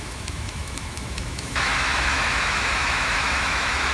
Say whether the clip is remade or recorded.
remade